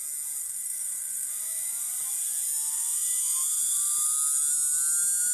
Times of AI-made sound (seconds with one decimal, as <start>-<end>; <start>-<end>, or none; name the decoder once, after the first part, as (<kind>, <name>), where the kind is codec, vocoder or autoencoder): 0.4-1.3 (codec, SNAC)